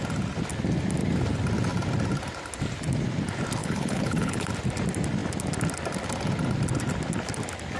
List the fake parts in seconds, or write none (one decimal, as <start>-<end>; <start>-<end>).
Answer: 3.6-4.5